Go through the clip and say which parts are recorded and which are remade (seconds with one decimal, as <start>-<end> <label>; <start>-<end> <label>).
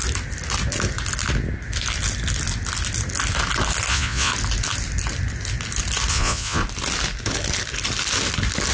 0.0-3.9 recorded; 3.9-4.3 remade; 4.3-6.1 recorded; 6.1-6.6 remade; 6.6-8.7 recorded